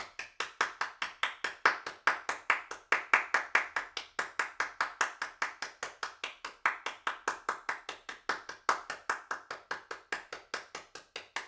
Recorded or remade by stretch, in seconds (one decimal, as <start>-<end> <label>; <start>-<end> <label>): 0.0-11.5 recorded